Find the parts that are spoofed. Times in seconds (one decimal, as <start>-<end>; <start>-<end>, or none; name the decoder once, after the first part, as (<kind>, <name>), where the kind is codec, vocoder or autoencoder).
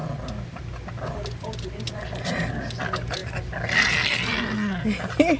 none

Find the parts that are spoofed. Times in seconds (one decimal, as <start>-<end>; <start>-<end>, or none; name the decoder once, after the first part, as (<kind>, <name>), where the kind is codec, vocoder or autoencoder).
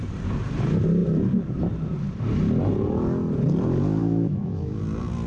4.0-4.8 (autoencoder, DAC-VAE)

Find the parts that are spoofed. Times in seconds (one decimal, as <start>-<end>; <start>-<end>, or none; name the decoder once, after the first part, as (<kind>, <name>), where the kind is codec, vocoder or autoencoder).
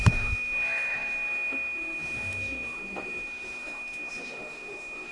0.0-5.1 (autoencoder, DAC-VAE)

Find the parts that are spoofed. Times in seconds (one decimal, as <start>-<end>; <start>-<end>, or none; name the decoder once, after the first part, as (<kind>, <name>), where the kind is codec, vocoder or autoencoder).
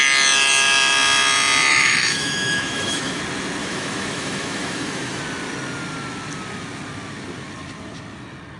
1.7-3.2 (autoencoder, DAC-VAE); 3.6-5.2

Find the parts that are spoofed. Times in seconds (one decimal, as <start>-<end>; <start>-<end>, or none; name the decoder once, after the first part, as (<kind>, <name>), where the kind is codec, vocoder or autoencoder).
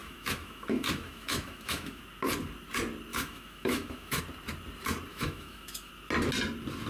0.0-2.0 (autoencoder, DAC-VAE); 3.1-4.2; 5.1-5.9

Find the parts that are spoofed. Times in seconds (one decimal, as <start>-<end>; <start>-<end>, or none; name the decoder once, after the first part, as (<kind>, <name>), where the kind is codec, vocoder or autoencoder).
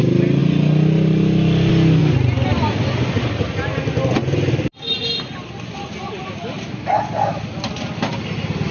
none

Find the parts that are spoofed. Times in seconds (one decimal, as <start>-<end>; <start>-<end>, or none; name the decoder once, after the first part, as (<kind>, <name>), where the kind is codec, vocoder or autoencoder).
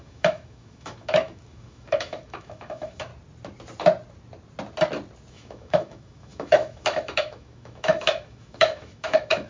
0.0-3.1 (autoencoder, DAC-VAE); 5.3-9.5